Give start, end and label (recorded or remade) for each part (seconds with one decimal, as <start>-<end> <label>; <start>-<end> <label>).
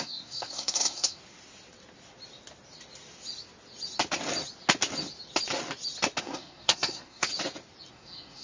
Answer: 0.0-1.2 remade; 1.2-6.2 recorded; 6.2-7.3 remade; 7.3-7.9 recorded; 7.9-8.4 remade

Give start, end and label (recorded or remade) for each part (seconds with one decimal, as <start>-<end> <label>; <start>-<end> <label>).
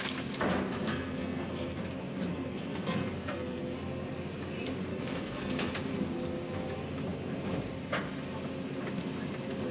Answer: 0.0-0.9 recorded; 0.9-1.8 remade; 1.8-2.3 recorded; 2.3-3.6 remade; 3.6-4.9 recorded; 4.9-5.7 remade; 5.7-9.7 recorded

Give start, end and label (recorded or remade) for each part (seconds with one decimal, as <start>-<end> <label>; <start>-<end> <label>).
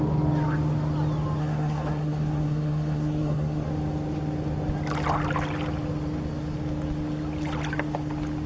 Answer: 0.0-1.4 recorded; 1.4-3.7 remade; 3.7-8.5 recorded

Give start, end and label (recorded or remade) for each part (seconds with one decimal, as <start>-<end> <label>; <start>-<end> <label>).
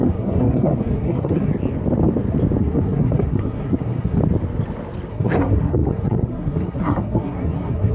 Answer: 0.0-1.5 remade; 1.5-2.6 recorded; 2.6-4.2 remade; 4.2-5.1 recorded; 5.1-7.9 remade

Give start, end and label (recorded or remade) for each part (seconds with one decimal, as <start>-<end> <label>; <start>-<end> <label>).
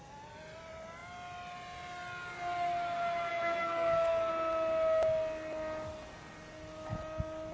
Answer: 0.0-3.3 recorded; 3.3-4.3 remade; 4.3-7.5 recorded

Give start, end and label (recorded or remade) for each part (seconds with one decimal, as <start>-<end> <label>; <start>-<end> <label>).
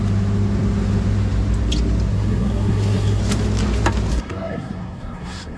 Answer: 0.0-2.1 recorded; 2.1-3.2 remade; 3.2-4.1 recorded; 4.1-5.6 remade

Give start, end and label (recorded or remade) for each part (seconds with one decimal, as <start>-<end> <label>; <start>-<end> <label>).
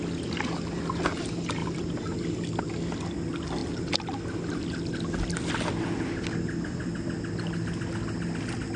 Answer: 0.0-8.8 recorded